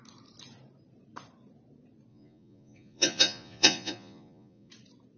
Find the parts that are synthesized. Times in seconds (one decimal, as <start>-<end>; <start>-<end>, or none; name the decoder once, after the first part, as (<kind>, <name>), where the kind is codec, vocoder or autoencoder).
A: 2.1-4.7 (vocoder, Vocos)

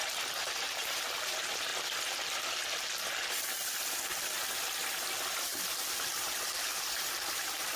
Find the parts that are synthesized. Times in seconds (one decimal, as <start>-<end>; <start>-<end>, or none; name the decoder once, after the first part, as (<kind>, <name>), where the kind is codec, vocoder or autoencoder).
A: 0.6-1.7 (vocoder, BigVGAN v2); 5.9-7.8

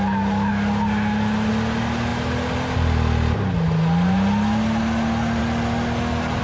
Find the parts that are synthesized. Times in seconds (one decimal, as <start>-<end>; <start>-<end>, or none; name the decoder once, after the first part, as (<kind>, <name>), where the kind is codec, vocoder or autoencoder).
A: none

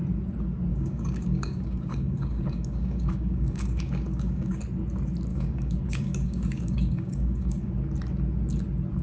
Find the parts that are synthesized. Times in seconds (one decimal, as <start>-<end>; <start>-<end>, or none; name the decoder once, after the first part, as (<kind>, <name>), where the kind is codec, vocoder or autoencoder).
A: 0.7-4.6 (codec, DAC); 5.3-7.7

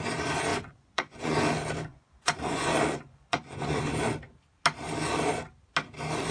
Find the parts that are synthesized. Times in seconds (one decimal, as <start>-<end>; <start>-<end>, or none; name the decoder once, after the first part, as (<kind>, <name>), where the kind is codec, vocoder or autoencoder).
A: 0.5-1.4 (vocoder, Vocos); 1.9-3.8